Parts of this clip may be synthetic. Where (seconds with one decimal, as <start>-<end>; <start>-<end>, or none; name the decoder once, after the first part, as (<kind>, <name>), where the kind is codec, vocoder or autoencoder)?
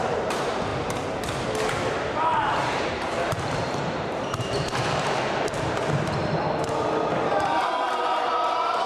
0.0-0.7 (vocoder, BigVGAN v2); 1.7-6.2; 8.2-8.9